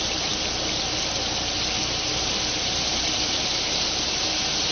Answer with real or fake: real